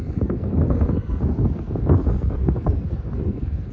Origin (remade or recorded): remade